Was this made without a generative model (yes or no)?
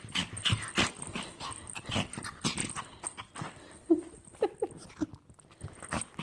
yes